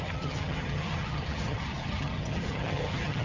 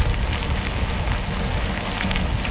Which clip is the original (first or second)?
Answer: second